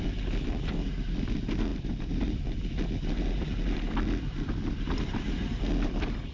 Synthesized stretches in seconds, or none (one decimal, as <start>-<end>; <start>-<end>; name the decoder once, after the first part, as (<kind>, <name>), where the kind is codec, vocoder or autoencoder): 1.7-2.2 (vocoder, BigVGAN v2)

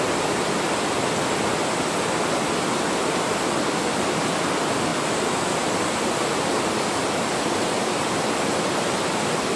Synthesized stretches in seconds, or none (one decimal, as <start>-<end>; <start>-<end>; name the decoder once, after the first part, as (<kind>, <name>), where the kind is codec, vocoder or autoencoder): none